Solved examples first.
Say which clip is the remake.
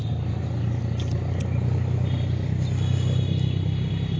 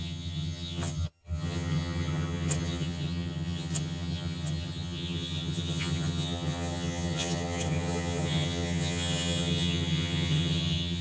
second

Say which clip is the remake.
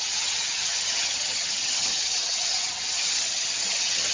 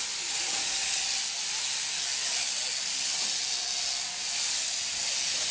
first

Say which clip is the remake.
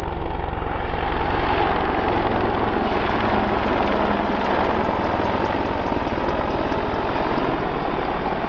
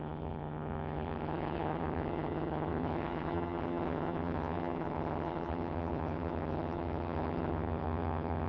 second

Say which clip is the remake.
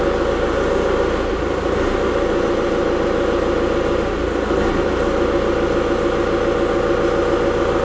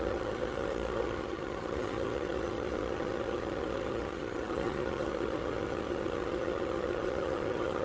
second